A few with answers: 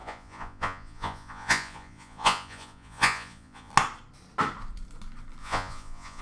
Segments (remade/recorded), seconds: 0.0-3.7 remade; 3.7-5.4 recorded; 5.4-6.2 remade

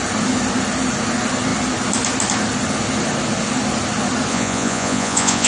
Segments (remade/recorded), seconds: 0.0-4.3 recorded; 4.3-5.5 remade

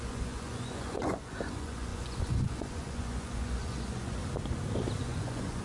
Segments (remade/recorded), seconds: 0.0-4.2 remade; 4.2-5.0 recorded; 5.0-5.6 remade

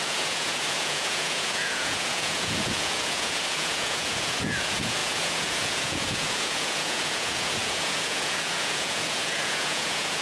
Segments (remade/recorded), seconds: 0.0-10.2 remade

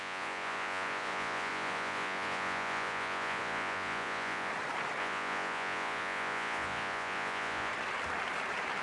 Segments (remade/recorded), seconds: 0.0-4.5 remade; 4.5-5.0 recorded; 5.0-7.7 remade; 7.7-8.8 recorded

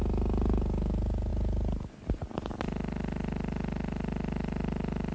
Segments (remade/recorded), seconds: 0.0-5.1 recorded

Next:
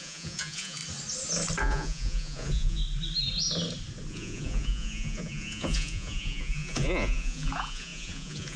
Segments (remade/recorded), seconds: 0.0-0.8 remade; 0.8-1.6 recorded; 1.6-2.8 remade; 2.8-4.1 recorded; 4.1-8.6 remade